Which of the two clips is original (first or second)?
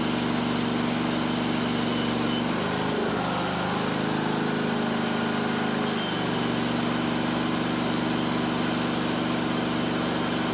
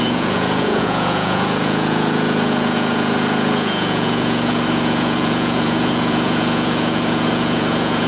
first